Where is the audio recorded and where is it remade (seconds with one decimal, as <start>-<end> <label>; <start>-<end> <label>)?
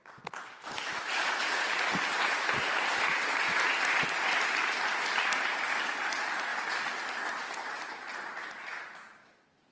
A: 0.0-6.5 recorded; 6.5-7.3 remade; 7.3-9.7 recorded